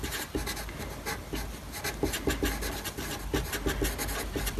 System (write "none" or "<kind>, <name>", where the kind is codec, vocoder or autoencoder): none